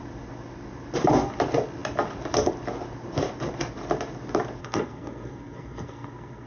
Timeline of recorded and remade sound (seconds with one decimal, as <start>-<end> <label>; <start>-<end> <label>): 0.0-4.6 recorded; 4.6-6.5 remade